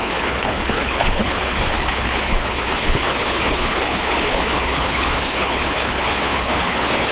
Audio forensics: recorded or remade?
remade